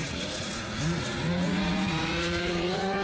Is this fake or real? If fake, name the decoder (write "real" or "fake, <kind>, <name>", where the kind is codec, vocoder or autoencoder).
fake, vocoder, Vocos